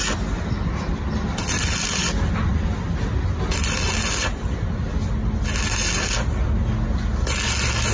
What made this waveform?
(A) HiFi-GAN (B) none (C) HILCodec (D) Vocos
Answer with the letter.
B